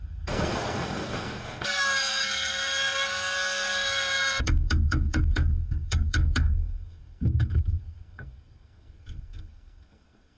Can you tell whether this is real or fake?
fake